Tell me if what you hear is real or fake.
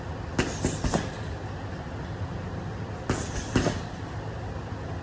real